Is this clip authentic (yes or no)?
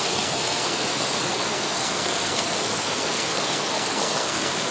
no